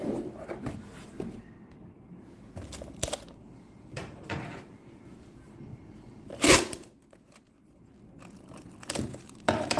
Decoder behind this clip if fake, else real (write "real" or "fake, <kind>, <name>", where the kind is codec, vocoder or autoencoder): real